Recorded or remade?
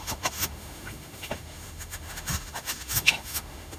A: remade